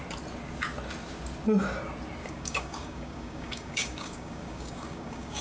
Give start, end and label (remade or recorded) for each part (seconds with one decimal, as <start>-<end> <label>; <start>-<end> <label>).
0.0-2.2 recorded; 2.2-5.4 remade

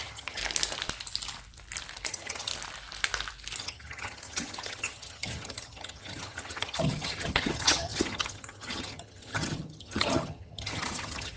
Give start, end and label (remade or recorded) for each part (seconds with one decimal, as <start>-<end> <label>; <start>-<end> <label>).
0.0-0.4 remade; 0.4-2.1 recorded; 2.1-2.5 remade; 2.5-3.6 recorded; 3.6-11.4 remade

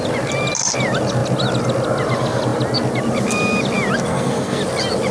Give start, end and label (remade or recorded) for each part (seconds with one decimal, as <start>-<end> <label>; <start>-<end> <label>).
0.0-4.1 recorded; 4.1-4.6 remade; 4.6-5.1 recorded